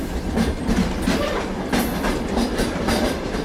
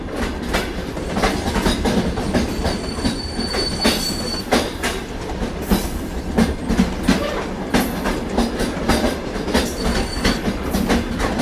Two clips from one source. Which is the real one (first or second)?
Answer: second